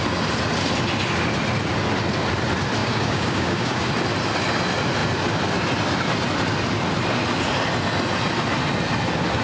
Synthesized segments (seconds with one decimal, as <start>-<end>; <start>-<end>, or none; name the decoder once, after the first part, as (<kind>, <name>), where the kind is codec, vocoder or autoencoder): 2.8-3.9 (codec, DAC)